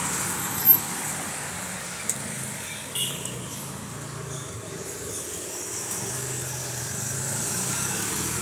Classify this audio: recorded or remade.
remade